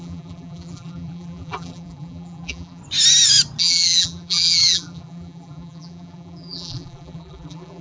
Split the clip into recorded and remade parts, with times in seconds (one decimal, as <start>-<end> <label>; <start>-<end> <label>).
0.0-2.8 remade; 2.8-3.6 recorded; 3.6-7.8 remade